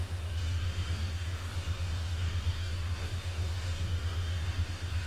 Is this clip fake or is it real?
fake